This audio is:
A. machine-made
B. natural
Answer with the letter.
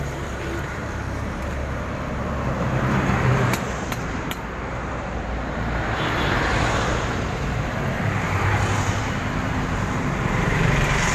A